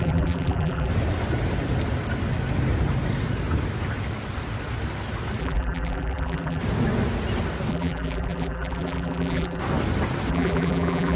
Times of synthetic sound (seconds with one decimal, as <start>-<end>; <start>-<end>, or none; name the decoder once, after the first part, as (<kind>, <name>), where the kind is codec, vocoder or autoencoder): 0.0-0.9 (vocoder, BigVGAN v2); 5.4-6.6; 7.7-9.6; 10.3-11.2